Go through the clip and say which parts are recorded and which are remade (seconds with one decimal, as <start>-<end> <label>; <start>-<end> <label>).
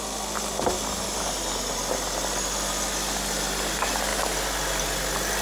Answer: 0.0-5.4 recorded